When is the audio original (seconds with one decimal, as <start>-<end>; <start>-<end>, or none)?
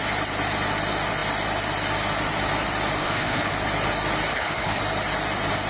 0.0-3.0; 3.5-4.3; 4.8-5.7